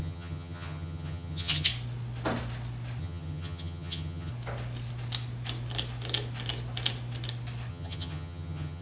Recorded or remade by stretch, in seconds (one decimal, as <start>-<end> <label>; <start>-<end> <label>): 0.0-1.7 remade; 1.7-3.0 recorded; 3.0-4.3 remade; 4.3-7.7 recorded; 7.7-8.8 remade